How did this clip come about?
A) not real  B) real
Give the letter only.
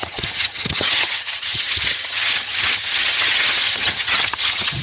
A